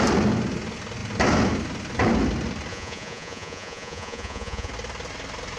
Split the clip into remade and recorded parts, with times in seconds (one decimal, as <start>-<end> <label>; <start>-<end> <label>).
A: 0.0-2.7 recorded; 2.7-4.7 remade; 4.7-5.6 recorded